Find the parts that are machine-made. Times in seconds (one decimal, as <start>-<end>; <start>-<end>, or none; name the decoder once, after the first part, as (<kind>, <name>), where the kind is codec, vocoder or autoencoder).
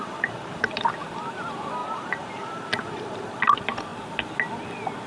0.0-0.8 (vocoder, BigVGAN v2); 1.8-3.4